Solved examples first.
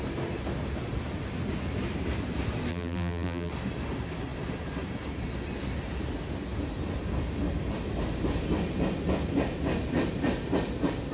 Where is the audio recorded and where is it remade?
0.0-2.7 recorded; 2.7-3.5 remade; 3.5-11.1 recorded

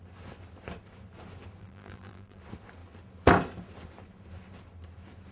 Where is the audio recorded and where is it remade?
0.0-1.6 recorded; 1.6-2.4 remade; 2.4-5.3 recorded

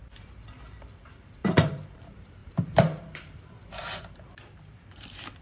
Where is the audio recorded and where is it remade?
0.0-5.4 remade